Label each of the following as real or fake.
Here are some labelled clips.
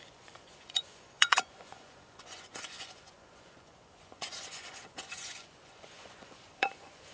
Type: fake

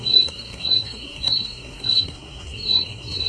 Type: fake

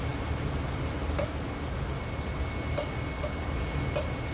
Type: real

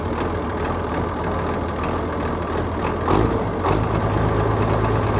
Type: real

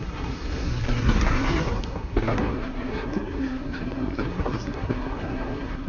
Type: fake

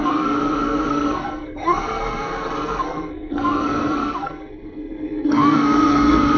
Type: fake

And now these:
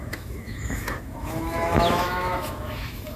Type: fake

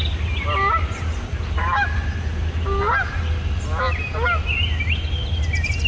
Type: real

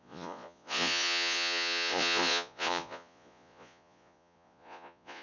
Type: fake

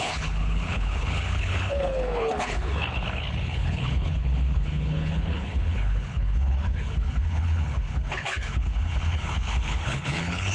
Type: fake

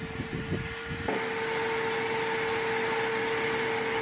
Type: real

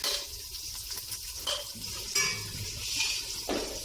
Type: real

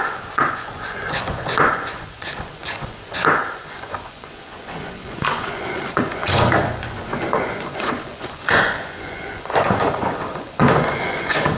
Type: fake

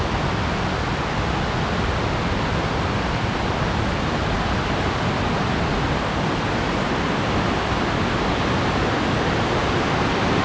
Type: real